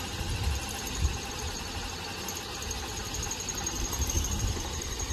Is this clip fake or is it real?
real